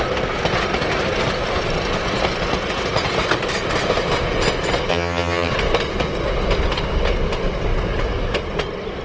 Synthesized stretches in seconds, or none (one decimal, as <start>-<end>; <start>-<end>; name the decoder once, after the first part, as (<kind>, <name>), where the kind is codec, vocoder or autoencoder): 4.9-5.5 (vocoder, HiFi-GAN)